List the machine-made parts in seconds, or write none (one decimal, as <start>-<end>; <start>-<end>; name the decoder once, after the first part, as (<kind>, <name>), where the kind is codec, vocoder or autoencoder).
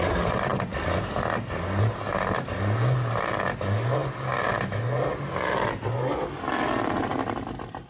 none